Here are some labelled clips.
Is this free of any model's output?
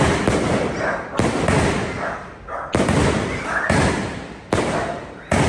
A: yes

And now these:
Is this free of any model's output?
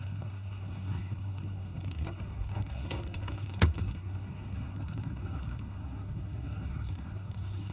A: no